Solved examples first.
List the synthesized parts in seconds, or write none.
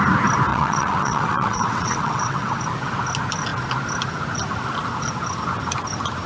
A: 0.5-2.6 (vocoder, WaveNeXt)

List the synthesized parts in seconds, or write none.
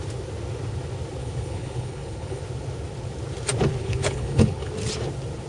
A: 1.2-2.4 (codec, HILCodec); 3.8-4.7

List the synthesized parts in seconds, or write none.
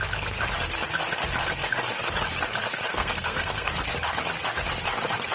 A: 2.9-3.7 (codec, SNAC)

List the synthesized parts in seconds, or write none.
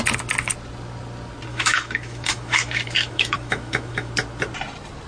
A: 1.5-4.1 (autoencoder, DAC-VAE)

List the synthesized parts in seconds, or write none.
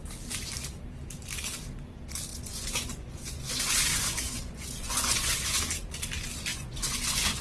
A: 2.3-5.6 (vocoder, Vocos); 6.5-7.4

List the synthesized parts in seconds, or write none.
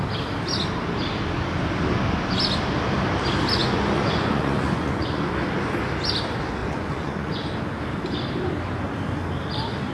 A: 3.6-5.4 (vocoder, Vocos); 6.6-7.4